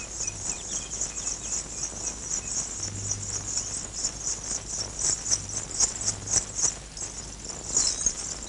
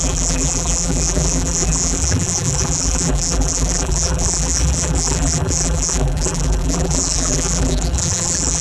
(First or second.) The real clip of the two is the first